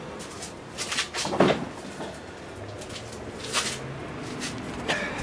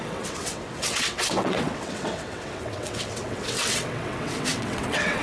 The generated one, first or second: second